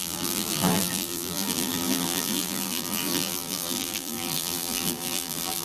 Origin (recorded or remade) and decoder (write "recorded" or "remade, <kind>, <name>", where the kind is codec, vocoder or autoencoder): remade, vocoder, BigVGAN v2